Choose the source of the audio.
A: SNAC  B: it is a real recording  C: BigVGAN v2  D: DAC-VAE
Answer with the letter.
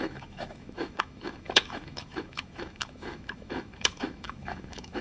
D